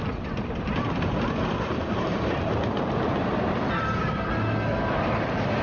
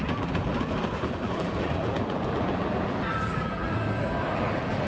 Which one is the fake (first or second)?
second